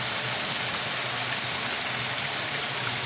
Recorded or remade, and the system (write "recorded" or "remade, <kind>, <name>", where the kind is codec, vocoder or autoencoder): recorded